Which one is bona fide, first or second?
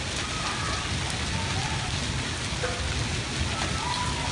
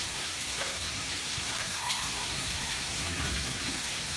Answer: first